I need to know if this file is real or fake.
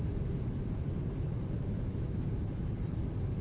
fake